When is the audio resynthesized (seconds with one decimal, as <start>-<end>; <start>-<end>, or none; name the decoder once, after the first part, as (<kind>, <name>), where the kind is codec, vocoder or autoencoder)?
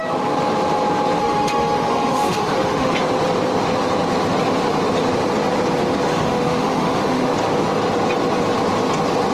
1.2-2.9 (autoencoder, DAC-VAE); 6.1-7.3